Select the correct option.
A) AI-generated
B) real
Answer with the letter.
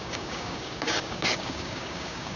A